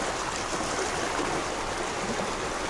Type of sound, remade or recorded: recorded